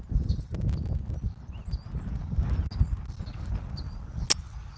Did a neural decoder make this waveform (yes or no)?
no